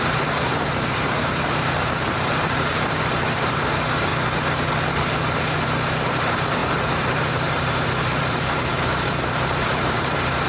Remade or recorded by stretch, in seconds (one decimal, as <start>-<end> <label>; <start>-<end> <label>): 0.0-4.1 remade; 4.1-4.9 recorded; 4.9-10.5 remade